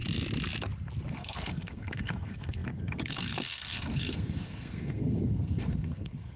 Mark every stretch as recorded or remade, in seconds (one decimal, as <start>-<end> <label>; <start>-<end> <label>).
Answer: 0.0-1.1 recorded; 1.1-6.4 remade